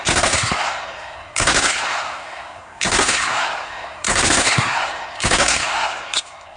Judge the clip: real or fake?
fake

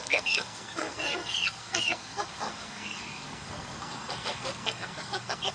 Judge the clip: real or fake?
fake